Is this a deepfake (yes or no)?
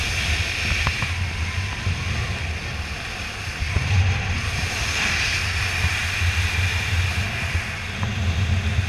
no